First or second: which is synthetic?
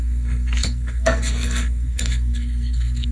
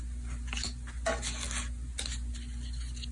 first